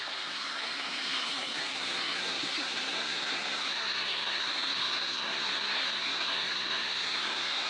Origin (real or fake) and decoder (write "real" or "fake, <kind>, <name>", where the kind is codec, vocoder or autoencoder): fake, codec, SNAC